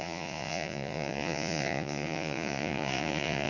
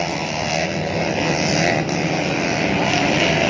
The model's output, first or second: first